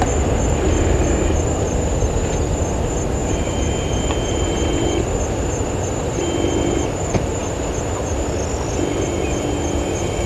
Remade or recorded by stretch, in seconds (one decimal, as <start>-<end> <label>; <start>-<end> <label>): 0.0-3.2 recorded; 3.2-4.9 remade; 4.9-10.3 recorded